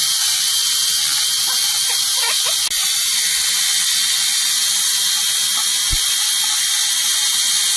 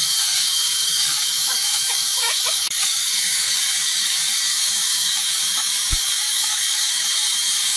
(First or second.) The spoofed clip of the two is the second